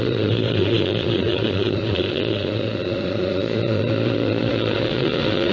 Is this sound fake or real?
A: fake